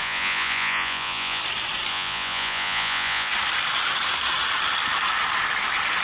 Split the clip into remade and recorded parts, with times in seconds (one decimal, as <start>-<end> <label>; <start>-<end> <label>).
0.0-1.4 remade; 1.4-1.9 recorded; 1.9-3.3 remade; 3.3-6.0 recorded